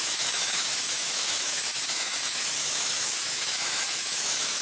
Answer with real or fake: fake